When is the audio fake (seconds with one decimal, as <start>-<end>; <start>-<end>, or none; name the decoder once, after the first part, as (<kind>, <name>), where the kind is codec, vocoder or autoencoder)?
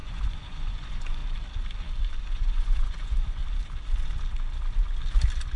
0.0-1.2 (vocoder, Vocos); 2.2-3.4